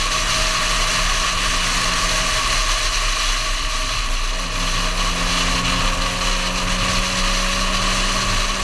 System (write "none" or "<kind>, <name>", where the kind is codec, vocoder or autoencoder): none